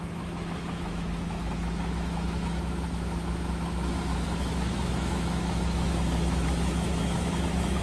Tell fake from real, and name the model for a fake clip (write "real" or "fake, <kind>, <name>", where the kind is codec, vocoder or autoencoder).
fake, autoencoder, DAC-VAE